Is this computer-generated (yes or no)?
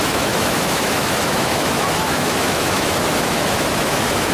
yes